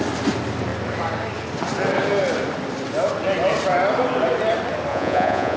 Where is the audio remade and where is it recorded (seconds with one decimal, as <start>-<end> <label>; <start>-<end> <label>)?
0.0-4.9 recorded; 4.9-5.6 remade